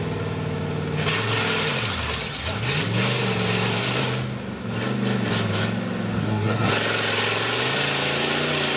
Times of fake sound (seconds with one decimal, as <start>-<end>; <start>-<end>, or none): 6.2-6.7